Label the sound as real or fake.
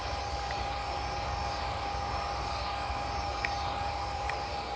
fake